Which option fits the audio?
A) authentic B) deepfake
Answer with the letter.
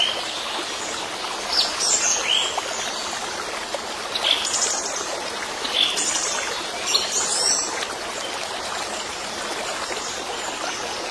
A